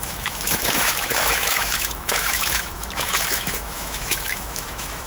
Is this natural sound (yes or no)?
no